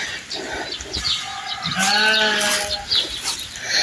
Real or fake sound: real